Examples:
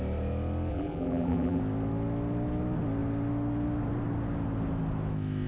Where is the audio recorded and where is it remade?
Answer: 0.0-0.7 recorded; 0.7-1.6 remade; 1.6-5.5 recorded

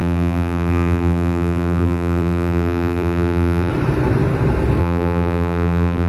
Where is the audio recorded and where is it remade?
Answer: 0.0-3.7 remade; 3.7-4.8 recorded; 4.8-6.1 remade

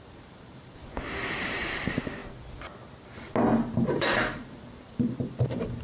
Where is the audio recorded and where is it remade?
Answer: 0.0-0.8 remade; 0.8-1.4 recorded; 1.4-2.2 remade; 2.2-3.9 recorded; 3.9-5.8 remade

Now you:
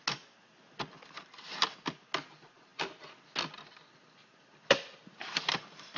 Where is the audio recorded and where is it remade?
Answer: 0.0-6.0 recorded

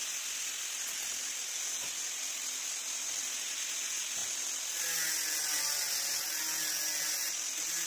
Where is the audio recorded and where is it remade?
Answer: 0.0-7.9 recorded